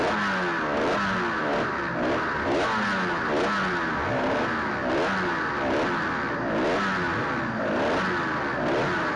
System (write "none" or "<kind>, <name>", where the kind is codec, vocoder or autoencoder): none